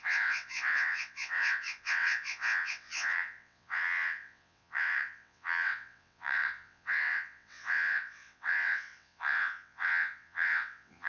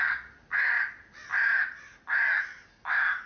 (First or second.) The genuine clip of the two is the second